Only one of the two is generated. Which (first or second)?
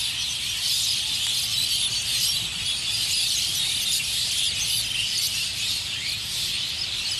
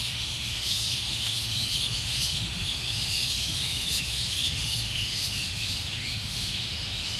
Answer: second